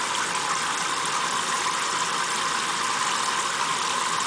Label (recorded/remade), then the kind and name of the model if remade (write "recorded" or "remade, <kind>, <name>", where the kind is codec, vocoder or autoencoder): recorded